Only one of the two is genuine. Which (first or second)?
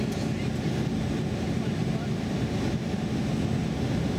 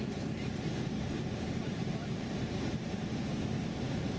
first